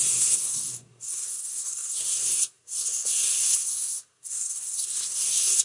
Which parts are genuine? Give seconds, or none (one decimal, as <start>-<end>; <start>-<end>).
none